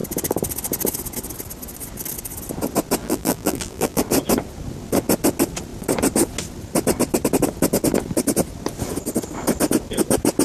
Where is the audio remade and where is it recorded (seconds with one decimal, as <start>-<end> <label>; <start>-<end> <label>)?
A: 0.0-3.0 recorded; 3.0-4.0 remade; 4.0-10.4 recorded